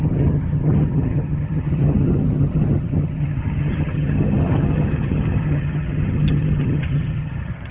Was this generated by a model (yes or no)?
yes